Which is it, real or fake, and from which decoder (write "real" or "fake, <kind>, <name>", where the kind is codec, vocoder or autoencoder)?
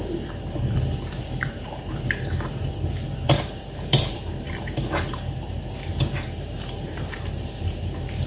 fake, vocoder, BigVGAN v2